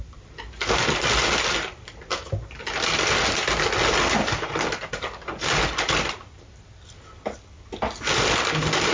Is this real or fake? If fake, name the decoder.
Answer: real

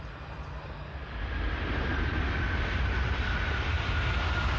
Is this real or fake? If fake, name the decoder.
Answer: real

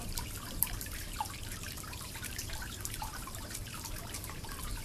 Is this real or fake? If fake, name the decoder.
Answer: fake, vocoder, BigVGAN v2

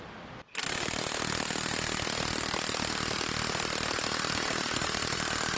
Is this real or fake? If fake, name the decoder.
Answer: real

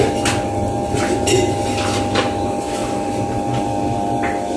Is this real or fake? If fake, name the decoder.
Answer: real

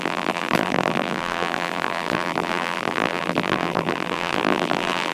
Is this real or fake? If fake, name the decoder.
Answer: fake, vocoder, BigVGAN v2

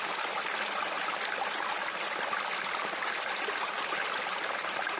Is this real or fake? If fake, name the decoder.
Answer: fake, vocoder, BigVGAN v2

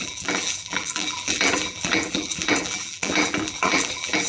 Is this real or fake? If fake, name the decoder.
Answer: fake, vocoder, BigVGAN v2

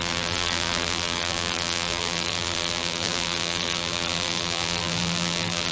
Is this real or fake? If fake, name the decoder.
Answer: fake, vocoder, BigVGAN v2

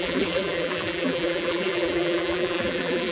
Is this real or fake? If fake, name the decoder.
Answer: fake, vocoder, BigVGAN v2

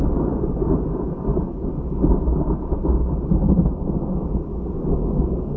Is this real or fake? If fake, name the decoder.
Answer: real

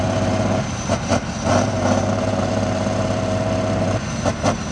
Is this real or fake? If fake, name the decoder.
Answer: fake, vocoder, BigVGAN v2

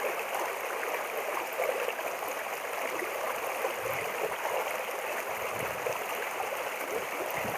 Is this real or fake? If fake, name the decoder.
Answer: real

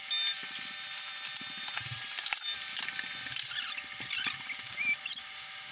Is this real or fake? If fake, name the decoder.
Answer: real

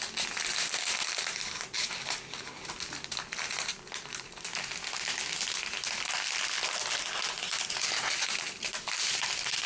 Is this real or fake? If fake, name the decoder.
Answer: real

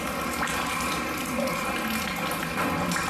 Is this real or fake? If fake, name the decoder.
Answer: real